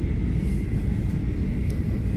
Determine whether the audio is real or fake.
fake